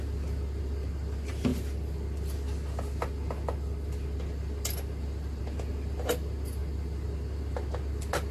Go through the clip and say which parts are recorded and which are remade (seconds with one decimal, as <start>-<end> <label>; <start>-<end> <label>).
0.0-8.3 recorded